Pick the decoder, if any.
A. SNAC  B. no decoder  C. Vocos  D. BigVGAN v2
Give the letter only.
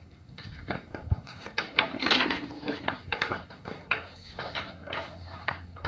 A